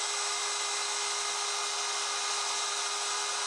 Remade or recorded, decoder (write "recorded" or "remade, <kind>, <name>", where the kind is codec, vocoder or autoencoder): recorded